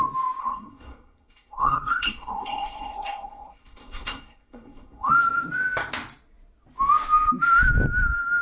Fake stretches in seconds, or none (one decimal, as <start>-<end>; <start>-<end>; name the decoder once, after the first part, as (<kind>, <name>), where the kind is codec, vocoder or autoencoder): 0.4-5.1 (codec, SNAC)